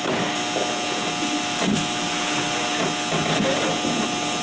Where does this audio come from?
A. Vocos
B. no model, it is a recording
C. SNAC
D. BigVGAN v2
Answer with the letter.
B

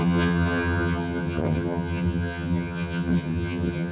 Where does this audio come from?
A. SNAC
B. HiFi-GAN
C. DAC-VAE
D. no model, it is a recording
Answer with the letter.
B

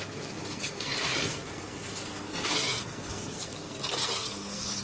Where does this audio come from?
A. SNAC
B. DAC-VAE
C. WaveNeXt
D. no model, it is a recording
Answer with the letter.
A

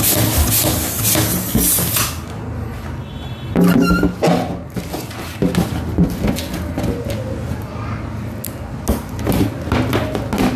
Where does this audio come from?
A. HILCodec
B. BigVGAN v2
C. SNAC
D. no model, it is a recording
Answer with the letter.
D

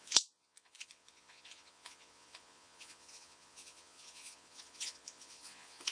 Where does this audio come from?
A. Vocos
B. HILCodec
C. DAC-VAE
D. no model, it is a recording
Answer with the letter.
A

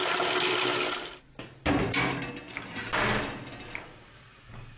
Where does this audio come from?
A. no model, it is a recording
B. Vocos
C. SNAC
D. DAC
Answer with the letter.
A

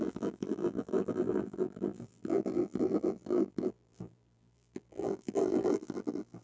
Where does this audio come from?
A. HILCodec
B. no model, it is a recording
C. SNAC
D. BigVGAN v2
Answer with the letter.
D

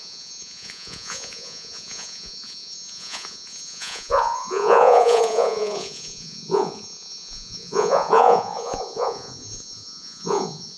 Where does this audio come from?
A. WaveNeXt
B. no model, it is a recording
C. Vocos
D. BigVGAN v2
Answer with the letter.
C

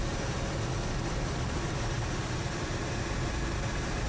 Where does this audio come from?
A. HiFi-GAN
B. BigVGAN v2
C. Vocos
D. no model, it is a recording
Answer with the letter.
D